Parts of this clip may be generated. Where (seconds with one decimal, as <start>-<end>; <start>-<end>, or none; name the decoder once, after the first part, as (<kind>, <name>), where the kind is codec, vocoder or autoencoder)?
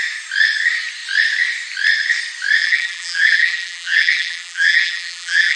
2.6-5.6 (vocoder, BigVGAN v2)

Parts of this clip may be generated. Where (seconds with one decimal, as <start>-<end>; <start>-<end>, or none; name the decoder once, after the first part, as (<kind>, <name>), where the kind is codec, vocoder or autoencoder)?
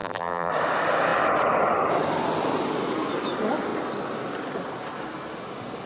0.0-0.5 (vocoder, BigVGAN v2)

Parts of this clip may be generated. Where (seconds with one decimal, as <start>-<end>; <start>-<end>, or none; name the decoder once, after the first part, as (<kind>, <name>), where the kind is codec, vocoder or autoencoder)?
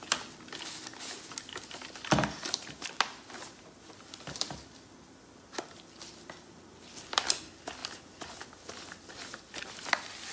none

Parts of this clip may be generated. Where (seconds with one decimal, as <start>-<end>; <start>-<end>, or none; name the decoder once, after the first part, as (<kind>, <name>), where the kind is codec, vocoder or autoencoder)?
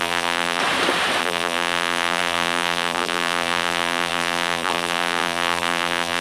0.0-0.6 (vocoder, BigVGAN v2); 1.2-6.2